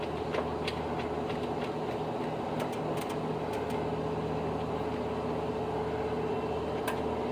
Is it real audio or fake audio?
real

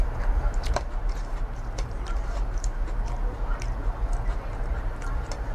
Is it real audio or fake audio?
fake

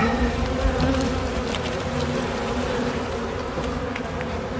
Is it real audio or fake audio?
fake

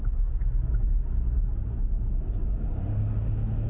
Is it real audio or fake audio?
real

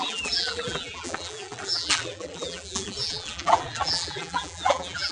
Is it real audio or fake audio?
fake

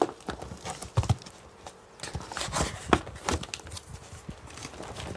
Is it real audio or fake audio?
real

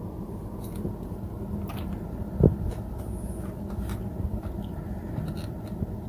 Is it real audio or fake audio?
real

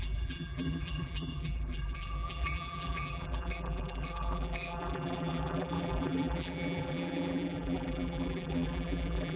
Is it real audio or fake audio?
fake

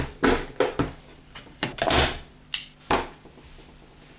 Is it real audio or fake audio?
real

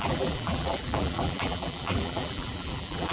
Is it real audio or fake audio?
fake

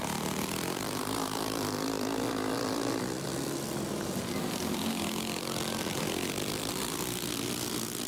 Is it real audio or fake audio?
fake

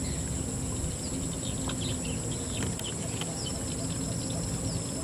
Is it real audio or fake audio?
real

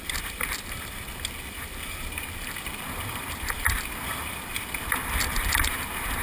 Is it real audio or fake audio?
fake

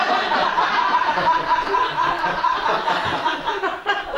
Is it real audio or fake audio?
fake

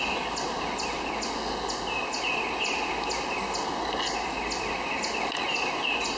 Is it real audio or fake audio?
real